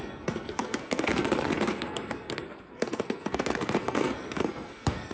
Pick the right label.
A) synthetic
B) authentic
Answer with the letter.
A